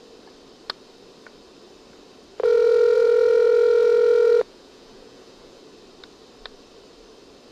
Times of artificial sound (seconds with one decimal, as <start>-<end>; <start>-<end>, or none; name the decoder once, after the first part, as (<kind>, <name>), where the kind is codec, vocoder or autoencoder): 2.4-5.6 (vocoder, Vocos)